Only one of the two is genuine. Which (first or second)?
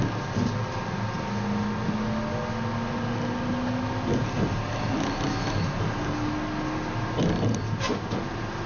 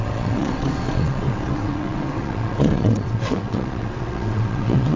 first